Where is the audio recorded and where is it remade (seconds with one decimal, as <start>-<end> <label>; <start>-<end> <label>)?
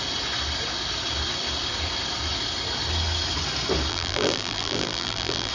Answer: 0.0-3.9 recorded; 3.9-5.5 remade